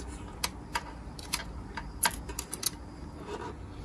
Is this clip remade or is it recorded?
recorded